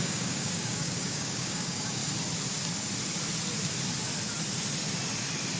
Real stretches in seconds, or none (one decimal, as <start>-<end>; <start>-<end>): 2.0-5.6